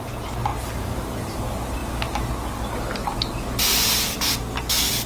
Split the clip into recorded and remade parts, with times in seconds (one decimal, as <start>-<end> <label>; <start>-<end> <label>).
0.0-1.8 recorded; 1.8-2.3 remade; 2.3-5.1 recorded